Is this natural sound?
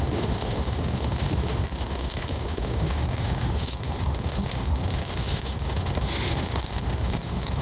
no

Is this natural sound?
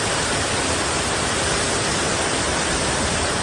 yes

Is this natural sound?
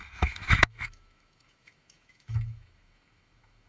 no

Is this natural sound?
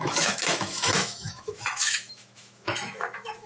no